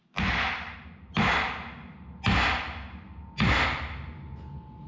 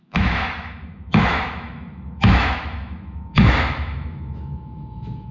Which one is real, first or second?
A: first